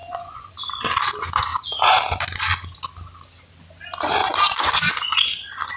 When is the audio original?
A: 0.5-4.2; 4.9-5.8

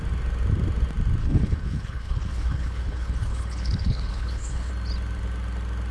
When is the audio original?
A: 0.0-1.2; 4.7-5.9

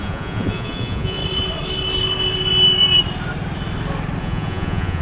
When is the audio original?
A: 1.2-4.2

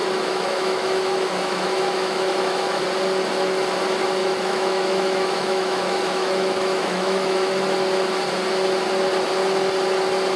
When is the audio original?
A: 2.8-4.2; 7.5-10.4